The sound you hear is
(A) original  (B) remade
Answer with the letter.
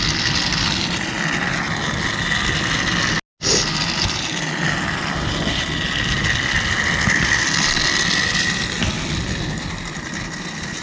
A